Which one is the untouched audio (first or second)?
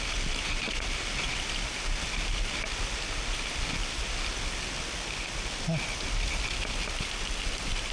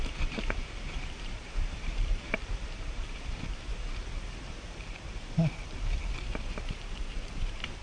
first